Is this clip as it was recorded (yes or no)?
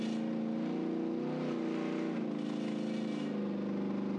yes